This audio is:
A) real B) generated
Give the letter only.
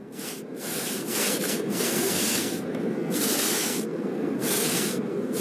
B